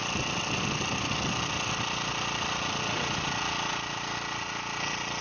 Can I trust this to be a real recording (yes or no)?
yes